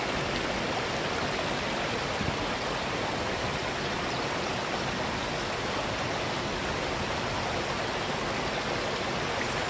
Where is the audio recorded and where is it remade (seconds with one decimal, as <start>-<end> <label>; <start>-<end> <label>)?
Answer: 0.0-3.6 recorded; 3.6-4.5 remade; 4.5-9.7 recorded